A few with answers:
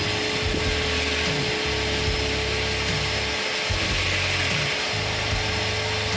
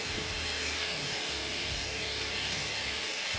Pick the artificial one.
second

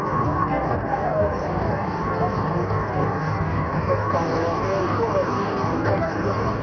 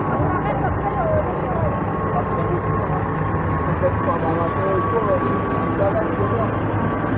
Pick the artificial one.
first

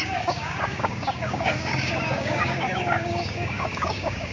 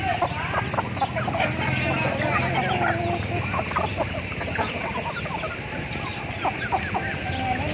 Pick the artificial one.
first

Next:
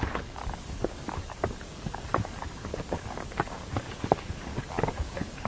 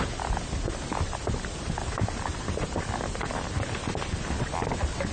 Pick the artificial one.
first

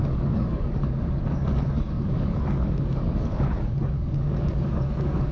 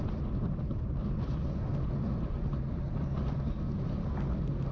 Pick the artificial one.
first